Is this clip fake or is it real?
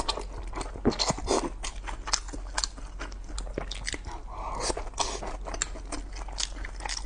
real